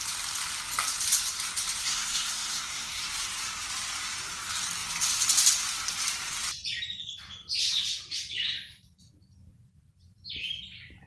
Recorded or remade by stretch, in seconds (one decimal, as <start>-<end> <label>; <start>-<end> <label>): 0.0-1.8 recorded; 1.8-3.0 remade; 3.0-11.1 recorded